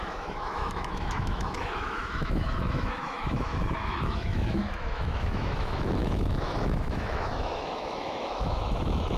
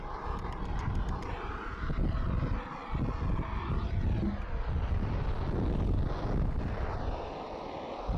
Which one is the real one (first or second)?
second